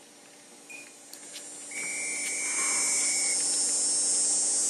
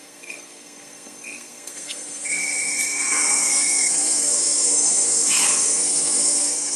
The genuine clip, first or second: first